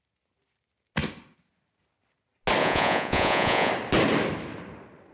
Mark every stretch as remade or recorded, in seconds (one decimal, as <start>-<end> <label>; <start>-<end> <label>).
0.0-2.6 recorded; 2.6-3.7 remade; 3.7-5.1 recorded